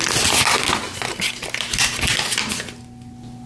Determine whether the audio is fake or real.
real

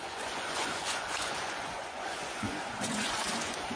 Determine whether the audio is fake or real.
fake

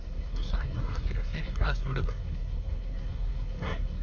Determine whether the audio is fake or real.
fake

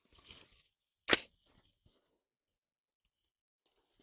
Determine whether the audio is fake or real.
real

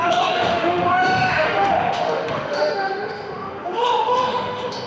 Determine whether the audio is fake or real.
fake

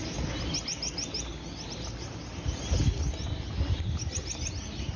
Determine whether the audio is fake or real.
real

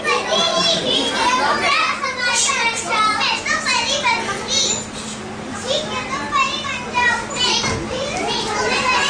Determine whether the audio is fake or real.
real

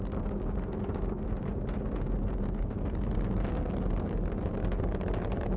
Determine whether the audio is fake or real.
real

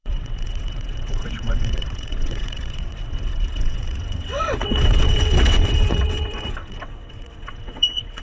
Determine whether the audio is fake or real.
fake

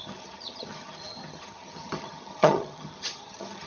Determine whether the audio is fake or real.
fake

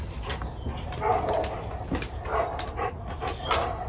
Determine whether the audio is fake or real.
real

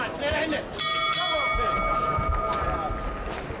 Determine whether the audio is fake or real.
real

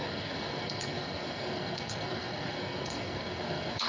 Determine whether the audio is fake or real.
fake